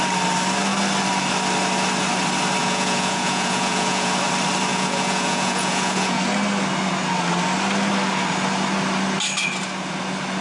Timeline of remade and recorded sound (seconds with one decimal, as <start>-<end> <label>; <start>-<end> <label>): 0.0-2.6 recorded; 2.6-4.1 remade; 4.1-4.7 recorded; 4.7-6.2 remade; 6.2-10.4 recorded